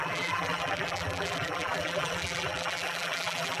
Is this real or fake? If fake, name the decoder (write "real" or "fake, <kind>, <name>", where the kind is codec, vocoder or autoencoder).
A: fake, vocoder, BigVGAN v2